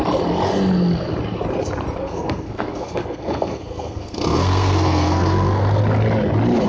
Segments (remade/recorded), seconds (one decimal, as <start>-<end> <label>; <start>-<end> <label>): 0.0-2.0 recorded; 2.0-5.8 remade; 5.8-6.7 recorded

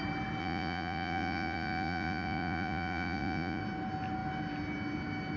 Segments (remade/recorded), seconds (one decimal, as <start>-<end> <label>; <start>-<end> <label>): 0.0-0.4 recorded; 0.4-3.6 remade; 3.6-5.4 recorded

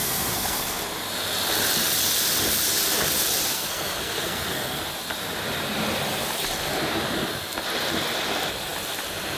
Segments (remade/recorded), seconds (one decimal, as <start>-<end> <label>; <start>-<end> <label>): 0.0-0.8 remade; 0.8-3.5 recorded; 3.5-4.8 remade; 4.8-9.4 recorded

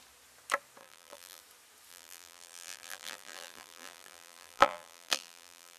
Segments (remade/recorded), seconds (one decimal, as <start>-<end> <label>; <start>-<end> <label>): 0.0-0.8 recorded; 0.8-1.4 remade; 1.4-1.9 recorded; 1.9-5.8 remade

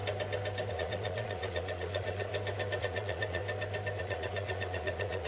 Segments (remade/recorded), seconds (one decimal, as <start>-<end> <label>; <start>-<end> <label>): 0.0-0.7 recorded; 0.7-2.3 remade; 2.3-2.8 recorded; 2.8-3.4 remade; 3.4-4.0 recorded; 4.0-5.3 remade

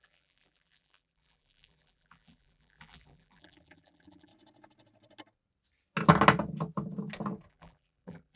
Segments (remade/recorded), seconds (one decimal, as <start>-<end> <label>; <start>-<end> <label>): 0.0-4.3 remade; 4.3-7.5 recorded; 7.5-8.4 remade

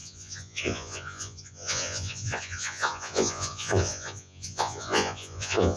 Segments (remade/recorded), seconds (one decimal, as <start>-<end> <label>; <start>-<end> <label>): 0.0-5.8 remade

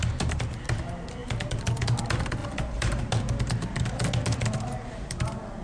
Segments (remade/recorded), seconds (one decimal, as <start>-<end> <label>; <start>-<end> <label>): 0.0-2.4 recorded; 2.4-3.0 remade; 3.0-5.6 recorded